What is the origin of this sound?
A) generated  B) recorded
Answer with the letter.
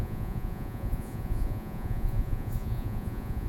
A